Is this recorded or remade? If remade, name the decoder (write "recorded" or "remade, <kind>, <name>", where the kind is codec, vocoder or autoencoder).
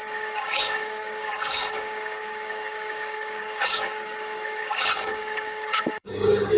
remade, codec, DAC